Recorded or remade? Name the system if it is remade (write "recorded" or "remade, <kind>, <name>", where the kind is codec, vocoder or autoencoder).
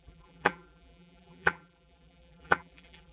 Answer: remade, vocoder, BigVGAN v2